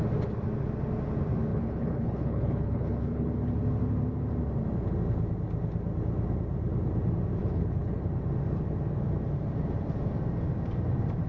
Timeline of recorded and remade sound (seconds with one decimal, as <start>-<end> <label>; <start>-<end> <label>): 0.0-1.5 recorded; 1.5-3.3 remade; 3.3-7.4 recorded; 7.4-8.0 remade; 8.0-11.3 recorded